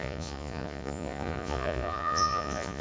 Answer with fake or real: fake